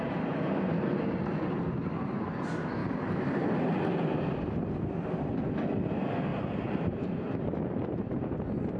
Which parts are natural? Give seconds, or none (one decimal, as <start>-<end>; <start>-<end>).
0.0-2.8; 4.4-6.3; 7.4-8.8